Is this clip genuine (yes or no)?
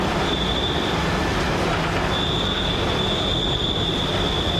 yes